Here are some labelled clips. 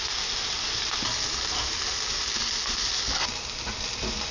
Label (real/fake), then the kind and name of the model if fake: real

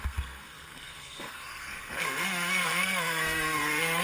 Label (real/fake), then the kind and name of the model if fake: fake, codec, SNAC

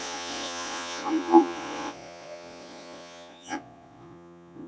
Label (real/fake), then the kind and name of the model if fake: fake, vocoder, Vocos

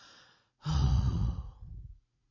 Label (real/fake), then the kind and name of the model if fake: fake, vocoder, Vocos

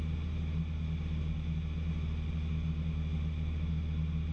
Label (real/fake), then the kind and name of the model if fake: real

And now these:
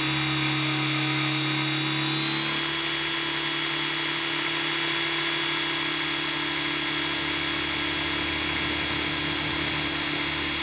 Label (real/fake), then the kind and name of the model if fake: real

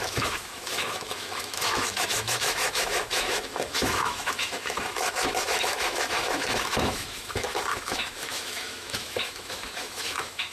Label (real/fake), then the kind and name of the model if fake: fake, autoencoder, DAC-VAE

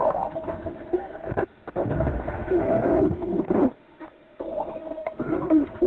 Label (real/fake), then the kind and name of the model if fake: fake, autoencoder, DAC-VAE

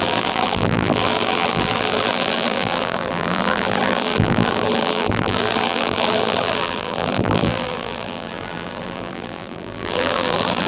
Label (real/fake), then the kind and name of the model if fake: fake, vocoder, BigVGAN v2